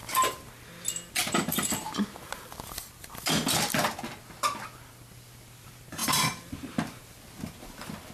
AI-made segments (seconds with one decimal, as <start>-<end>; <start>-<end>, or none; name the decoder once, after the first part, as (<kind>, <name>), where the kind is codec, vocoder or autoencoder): 6.0-7.0 (vocoder, BigVGAN v2)